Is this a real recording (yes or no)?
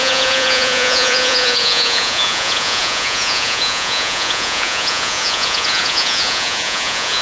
no